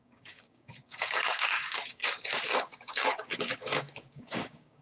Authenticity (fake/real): fake